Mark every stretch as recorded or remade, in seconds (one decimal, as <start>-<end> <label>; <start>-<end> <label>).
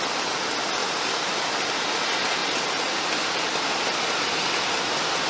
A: 0.0-0.8 recorded; 0.8-1.5 remade; 1.5-2.4 recorded; 2.4-4.0 remade; 4.0-5.3 recorded